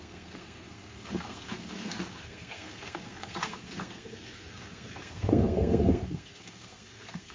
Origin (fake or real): fake